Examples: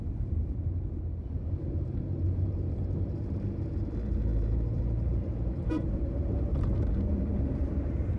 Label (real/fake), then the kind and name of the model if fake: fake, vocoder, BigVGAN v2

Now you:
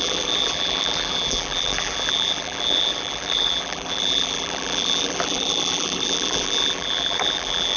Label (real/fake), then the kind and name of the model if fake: fake, vocoder, BigVGAN v2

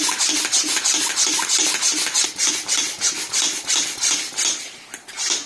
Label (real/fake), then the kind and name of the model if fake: real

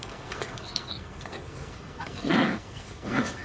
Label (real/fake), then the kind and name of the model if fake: fake, codec, SNAC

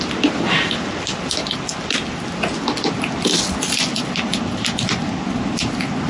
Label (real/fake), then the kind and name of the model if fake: real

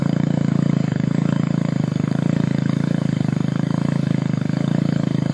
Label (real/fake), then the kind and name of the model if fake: fake, codec, DAC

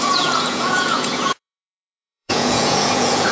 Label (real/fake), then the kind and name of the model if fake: fake, vocoder, Vocos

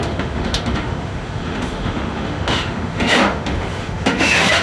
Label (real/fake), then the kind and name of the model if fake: fake, autoencoder, DAC-VAE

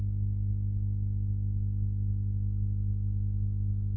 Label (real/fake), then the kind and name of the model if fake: real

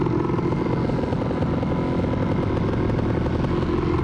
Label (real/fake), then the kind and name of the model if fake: real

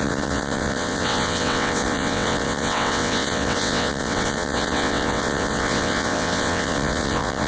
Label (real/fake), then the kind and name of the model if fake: fake, vocoder, WaveNeXt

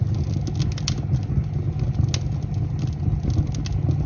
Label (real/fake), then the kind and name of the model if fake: real